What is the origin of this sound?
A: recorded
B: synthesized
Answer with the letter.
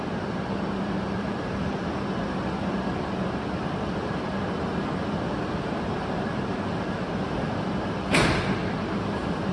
B